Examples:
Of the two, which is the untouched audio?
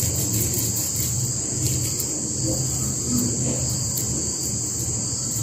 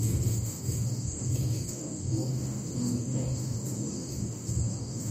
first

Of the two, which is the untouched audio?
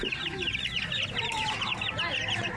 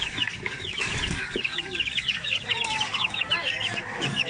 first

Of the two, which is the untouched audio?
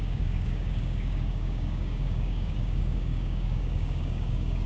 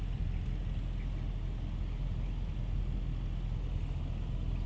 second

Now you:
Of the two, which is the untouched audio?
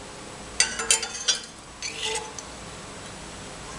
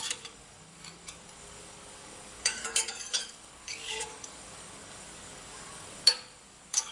first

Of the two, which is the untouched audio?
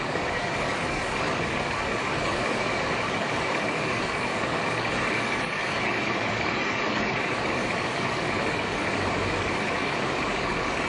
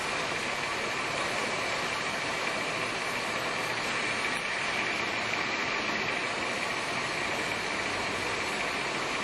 second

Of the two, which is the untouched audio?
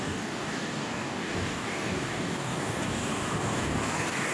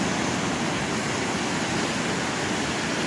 second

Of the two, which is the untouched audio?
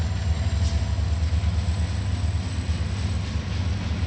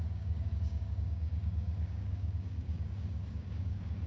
first